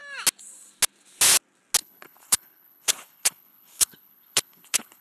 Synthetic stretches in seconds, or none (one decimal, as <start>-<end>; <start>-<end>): 1.8-5.0